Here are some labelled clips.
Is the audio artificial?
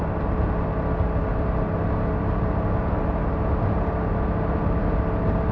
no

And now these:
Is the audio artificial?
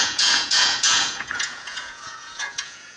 yes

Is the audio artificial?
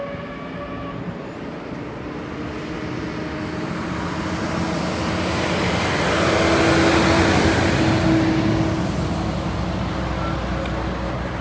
no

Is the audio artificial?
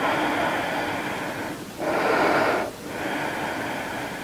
no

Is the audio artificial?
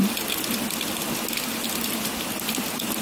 no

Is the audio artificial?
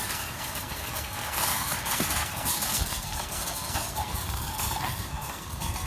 yes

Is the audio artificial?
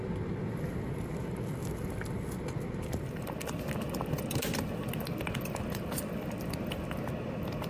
no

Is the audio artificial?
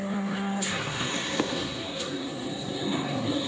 yes